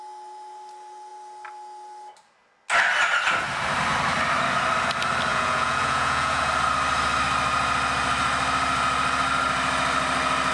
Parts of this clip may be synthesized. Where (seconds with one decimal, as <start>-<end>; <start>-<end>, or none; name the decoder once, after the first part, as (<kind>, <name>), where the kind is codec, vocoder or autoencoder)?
5.3-6.4 (vocoder, Vocos)